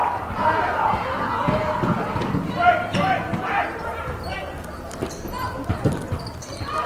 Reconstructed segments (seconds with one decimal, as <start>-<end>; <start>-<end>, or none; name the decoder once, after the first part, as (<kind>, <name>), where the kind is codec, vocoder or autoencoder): none